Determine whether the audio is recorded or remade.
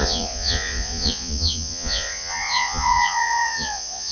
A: remade